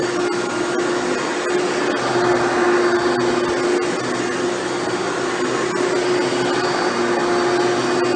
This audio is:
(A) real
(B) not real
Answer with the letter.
A